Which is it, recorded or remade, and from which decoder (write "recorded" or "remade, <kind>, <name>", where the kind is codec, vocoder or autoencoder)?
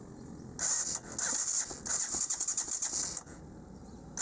recorded